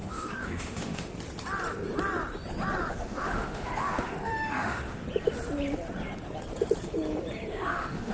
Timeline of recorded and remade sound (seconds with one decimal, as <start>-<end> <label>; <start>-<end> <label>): 0.0-1.1 remade; 1.1-2.9 recorded; 2.9-5.0 remade; 5.0-7.5 recorded; 7.5-8.1 remade

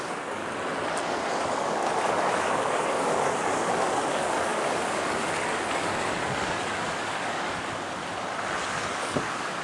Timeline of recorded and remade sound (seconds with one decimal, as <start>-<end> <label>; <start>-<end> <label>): 0.0-0.4 remade; 0.4-1.0 recorded; 1.0-8.0 remade; 8.0-8.6 recorded; 8.6-9.6 remade

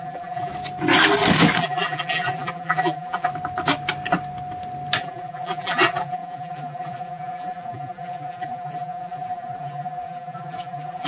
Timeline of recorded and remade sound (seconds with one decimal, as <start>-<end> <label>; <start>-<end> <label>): 0.0-0.5 remade; 0.5-1.6 recorded; 1.6-3.3 remade; 3.3-5.0 recorded; 5.0-11.1 remade

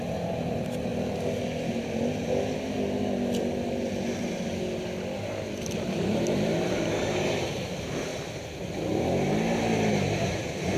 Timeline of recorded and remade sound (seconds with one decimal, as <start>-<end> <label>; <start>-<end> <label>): 0.0-0.9 remade; 0.9-5.2 recorded; 5.2-8.1 remade; 8.1-9.9 recorded; 9.9-10.8 remade

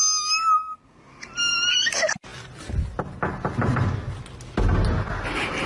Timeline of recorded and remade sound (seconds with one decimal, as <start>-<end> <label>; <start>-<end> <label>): 0.0-5.7 recorded

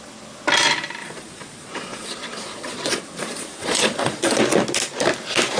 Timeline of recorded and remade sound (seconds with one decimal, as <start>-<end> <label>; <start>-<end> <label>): 0.0-1.0 recorded; 1.0-4.4 remade; 4.4-5.6 recorded

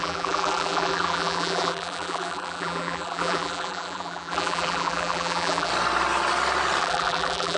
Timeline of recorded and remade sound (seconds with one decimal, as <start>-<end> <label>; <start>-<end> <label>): 0.0-5.7 remade; 5.7-6.8 recorded; 6.8-7.6 remade

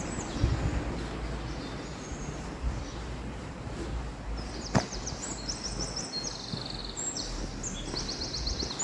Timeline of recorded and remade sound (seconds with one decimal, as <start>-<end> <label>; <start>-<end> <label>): 0.0-1.9 recorded; 1.9-5.4 remade; 5.4-6.8 recorded; 6.8-7.4 remade; 7.4-8.8 recorded